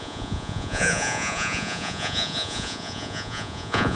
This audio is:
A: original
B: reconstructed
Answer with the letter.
B